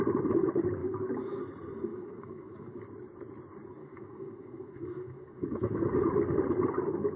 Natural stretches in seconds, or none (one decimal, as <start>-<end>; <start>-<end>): 0.0-0.8; 1.4-1.9; 2.8-3.8; 6.0-7.2